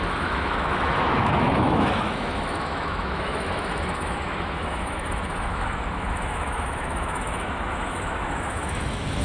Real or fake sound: fake